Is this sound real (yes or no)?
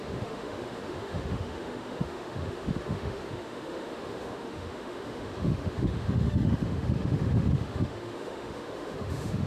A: no